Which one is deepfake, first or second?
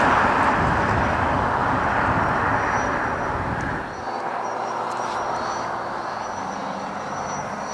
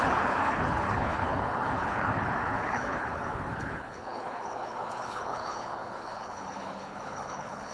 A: second